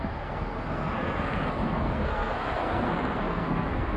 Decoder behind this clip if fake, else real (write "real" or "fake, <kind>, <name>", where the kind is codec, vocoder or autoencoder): fake, codec, SNAC